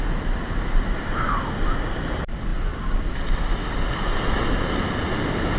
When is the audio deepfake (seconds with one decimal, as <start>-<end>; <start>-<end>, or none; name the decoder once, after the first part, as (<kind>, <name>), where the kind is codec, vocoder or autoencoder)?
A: none